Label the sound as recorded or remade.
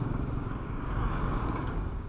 remade